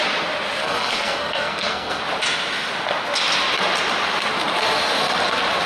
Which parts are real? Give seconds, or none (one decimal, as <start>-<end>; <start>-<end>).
0.0-0.6; 2.0-5.7